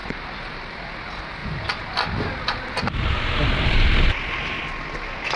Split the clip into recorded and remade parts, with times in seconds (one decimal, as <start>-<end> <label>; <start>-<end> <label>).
0.0-0.9 remade; 0.9-1.4 recorded; 1.4-4.6 remade; 4.6-5.4 recorded